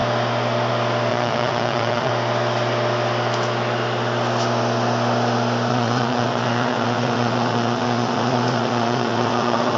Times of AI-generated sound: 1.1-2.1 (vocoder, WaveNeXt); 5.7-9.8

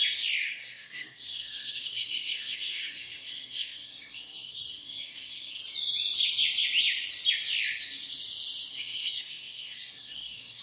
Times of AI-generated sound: 0.4-5.6 (codec, SNAC); 8.7-10.6

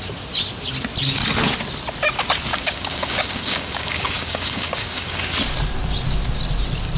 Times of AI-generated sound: 2.5-5.2 (codec, DAC)